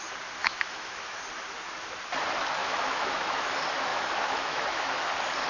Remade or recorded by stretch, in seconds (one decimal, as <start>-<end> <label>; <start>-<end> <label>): 0.0-0.4 recorded; 0.4-1.2 remade; 1.2-2.6 recorded; 2.6-3.5 remade; 3.5-3.9 recorded; 3.9-5.0 remade; 5.0-5.5 recorded